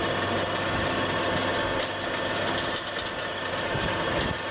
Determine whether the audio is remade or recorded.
recorded